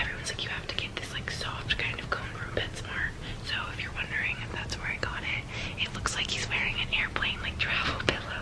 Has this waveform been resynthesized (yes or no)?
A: no